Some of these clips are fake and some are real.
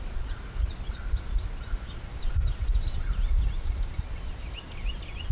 real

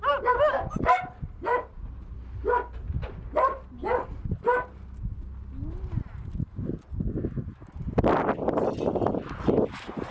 real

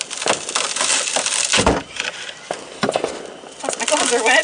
real